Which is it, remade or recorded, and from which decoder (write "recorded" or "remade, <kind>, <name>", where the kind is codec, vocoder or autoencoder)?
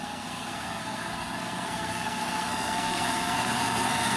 remade, codec, SNAC